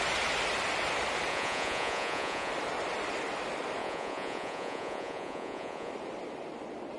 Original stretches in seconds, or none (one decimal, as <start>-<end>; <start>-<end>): 0.0-1.3; 2.5-3.8; 5.9-7.0